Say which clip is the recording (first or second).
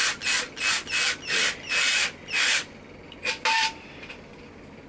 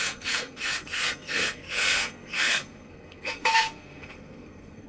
first